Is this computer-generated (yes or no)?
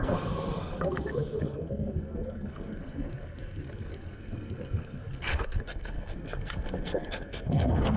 yes